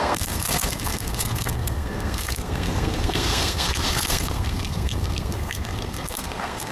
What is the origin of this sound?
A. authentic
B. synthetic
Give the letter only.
B